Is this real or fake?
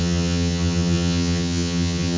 fake